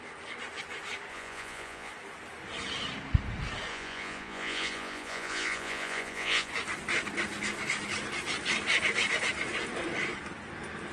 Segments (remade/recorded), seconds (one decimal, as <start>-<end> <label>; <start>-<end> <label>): 0.0-1.1 recorded; 1.1-1.9 remade; 1.9-3.7 recorded; 3.7-6.5 remade; 6.5-10.9 recorded